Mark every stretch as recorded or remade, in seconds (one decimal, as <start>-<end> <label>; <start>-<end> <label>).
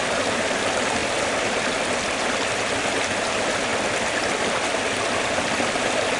0.0-6.2 recorded